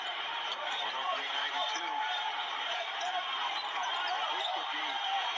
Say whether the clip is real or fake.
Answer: fake